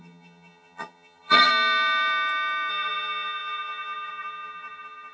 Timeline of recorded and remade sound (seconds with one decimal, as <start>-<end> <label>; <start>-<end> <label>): 0.0-1.5 remade; 1.5-2.7 recorded; 2.7-5.1 remade